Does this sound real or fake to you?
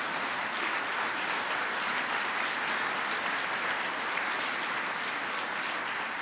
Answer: fake